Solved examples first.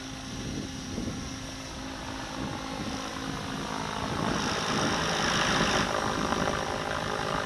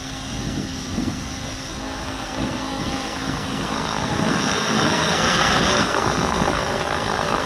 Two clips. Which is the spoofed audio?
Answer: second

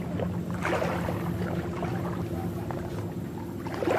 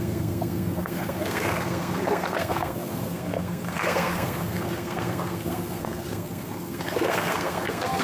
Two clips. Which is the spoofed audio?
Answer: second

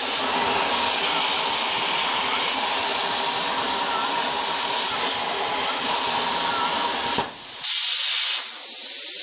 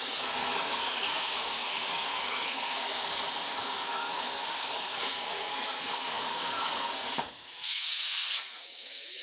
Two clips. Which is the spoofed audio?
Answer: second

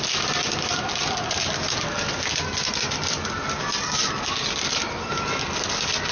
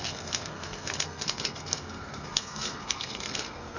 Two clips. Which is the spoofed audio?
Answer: second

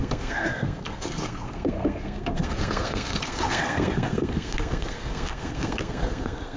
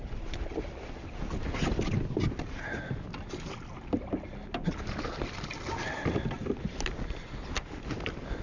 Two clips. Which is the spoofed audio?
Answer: first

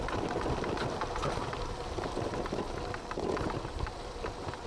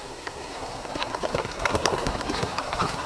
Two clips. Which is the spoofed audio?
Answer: second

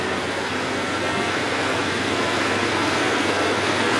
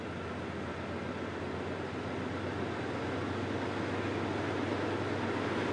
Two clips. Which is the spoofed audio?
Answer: first